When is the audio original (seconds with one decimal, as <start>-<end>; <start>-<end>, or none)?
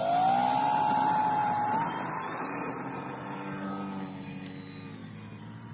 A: 0.0-1.4; 3.7-5.0